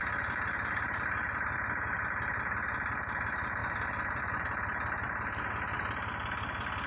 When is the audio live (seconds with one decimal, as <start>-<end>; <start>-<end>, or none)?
0.0-6.9